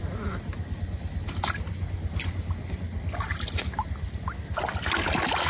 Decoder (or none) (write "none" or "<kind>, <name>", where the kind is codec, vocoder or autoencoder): none